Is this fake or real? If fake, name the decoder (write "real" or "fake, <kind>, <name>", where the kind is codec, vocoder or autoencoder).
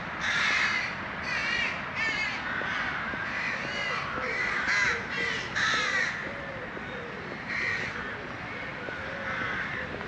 real